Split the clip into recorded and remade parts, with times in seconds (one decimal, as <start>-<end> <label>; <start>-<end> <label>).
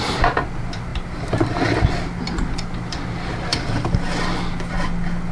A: 0.0-5.3 recorded